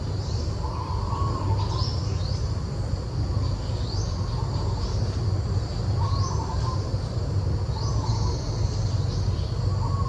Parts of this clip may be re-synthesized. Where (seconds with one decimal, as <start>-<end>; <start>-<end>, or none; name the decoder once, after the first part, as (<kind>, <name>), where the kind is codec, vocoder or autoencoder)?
5.7-7.3 (vocoder, BigVGAN v2)